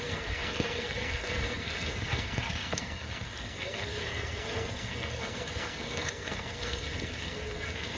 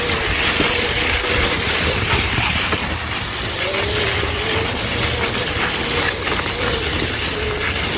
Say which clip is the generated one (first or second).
first